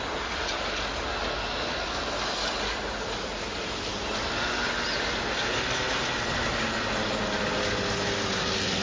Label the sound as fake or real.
real